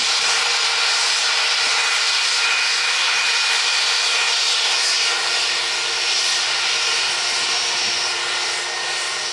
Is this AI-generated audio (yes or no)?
no